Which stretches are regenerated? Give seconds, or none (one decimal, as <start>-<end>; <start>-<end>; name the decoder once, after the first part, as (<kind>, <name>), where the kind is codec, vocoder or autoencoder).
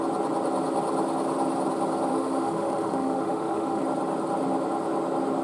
2.1-3.8 (autoencoder, DAC-VAE)